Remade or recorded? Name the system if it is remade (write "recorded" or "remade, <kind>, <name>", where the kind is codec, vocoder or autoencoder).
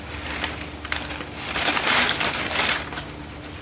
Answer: recorded